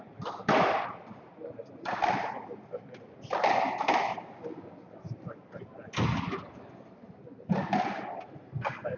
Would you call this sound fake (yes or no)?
no